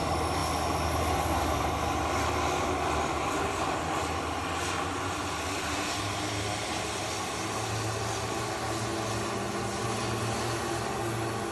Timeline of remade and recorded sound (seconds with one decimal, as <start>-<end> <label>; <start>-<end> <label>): 0.0-11.5 recorded